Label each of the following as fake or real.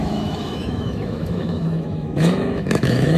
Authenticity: fake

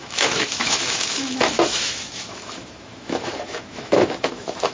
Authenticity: fake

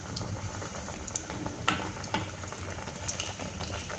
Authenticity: real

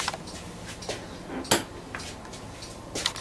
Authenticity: real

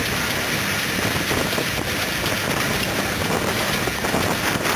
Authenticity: real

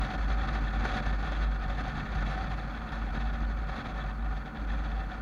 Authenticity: real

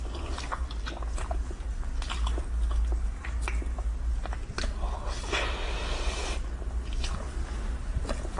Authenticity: real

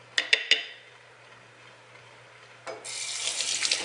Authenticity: real